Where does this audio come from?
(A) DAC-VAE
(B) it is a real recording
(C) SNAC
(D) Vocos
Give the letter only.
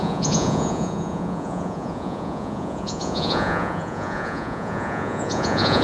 D